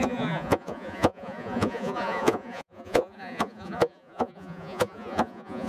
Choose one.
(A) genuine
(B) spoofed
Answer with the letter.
B